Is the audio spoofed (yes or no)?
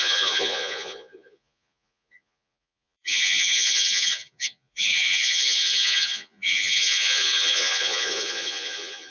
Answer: yes